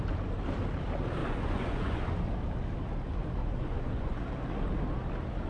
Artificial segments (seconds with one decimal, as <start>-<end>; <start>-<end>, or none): 1.2-2.1; 3.4-4.2